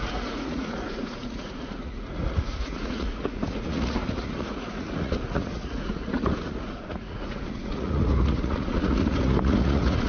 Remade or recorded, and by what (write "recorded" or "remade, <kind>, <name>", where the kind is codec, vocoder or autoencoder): remade, vocoder, Vocos